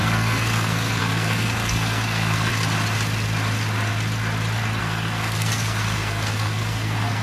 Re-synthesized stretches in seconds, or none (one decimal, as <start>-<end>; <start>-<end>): 0.0-2.5; 4.8-7.2